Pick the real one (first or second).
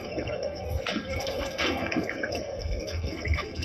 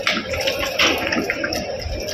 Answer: second